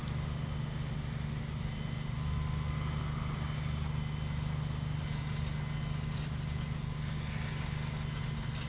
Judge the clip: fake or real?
real